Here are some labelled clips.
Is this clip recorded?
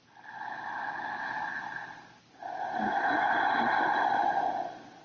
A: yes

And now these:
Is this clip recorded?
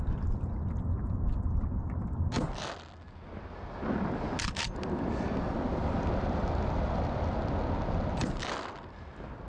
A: yes